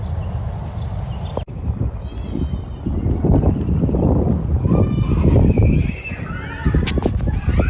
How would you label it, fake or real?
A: real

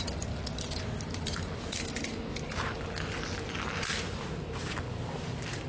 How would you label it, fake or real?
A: real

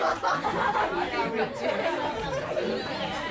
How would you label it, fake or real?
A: real